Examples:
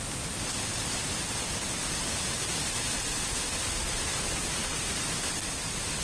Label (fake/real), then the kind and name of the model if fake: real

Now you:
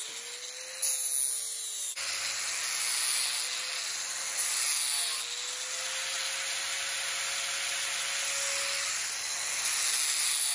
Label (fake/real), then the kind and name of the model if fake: real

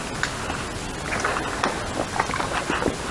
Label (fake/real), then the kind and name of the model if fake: real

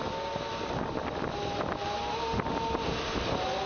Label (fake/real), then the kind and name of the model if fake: real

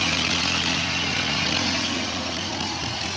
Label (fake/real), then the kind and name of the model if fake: fake, vocoder, Vocos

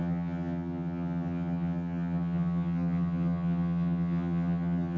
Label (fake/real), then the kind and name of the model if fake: fake, vocoder, HiFi-GAN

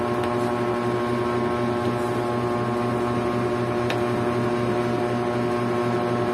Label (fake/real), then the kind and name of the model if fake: real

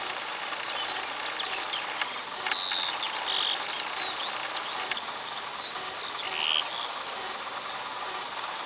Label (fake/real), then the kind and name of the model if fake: real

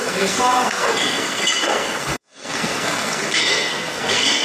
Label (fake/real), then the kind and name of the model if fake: fake, codec, SNAC